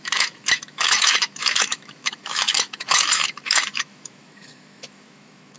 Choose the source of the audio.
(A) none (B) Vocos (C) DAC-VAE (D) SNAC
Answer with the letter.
C